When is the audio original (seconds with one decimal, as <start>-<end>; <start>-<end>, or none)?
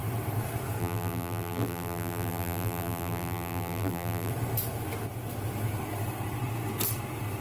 0.0-0.8; 4.3-7.4